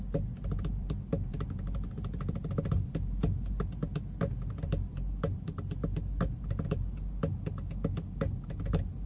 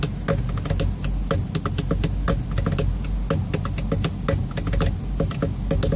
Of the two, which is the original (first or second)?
second